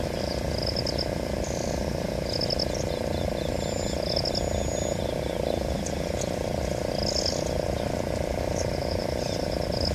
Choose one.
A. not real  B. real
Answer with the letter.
B